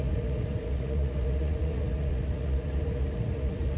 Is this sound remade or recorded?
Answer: remade